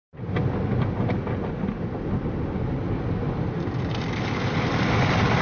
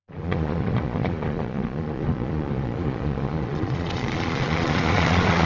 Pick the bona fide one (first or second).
first